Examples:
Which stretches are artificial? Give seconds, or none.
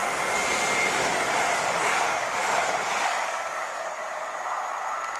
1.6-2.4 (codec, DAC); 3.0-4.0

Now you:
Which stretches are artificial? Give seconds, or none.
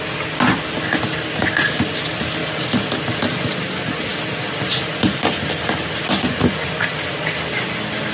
none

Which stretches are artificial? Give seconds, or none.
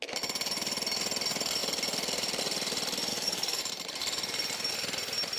3.1-3.6 (codec, DAC)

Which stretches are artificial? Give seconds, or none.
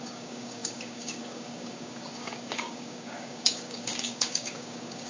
0.0-5.1 (codec, DAC)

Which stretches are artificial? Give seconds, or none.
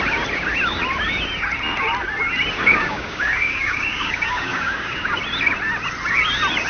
2.6-5.2 (codec, DAC)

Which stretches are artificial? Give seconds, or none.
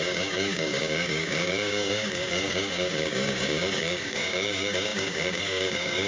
0.0-6.1 (codec, DAC)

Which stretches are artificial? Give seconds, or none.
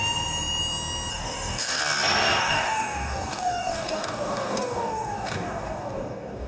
1.1-1.8 (codec, DAC); 2.4-6.5